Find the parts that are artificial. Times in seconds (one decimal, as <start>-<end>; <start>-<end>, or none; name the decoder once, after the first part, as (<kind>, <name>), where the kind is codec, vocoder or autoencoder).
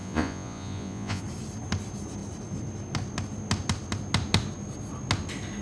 0.0-1.2 (vocoder, Vocos)